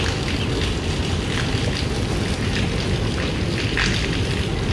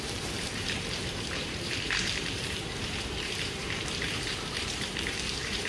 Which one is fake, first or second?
second